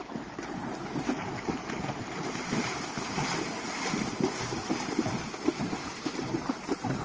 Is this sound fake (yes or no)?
yes